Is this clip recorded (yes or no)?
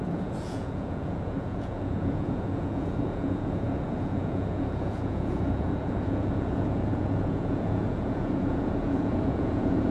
no